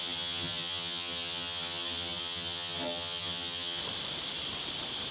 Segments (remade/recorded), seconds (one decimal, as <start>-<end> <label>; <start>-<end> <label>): 0.0-3.8 remade; 3.8-5.1 recorded